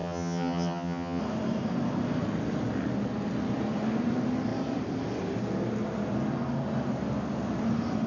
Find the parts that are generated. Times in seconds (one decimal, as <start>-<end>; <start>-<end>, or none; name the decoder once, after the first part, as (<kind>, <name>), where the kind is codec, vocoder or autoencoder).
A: 0.0-1.2 (vocoder, HiFi-GAN)